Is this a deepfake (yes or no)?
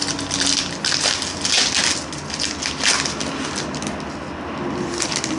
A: no